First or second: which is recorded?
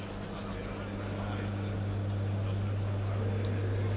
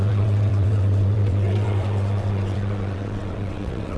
first